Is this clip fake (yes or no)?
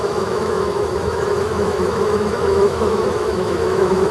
yes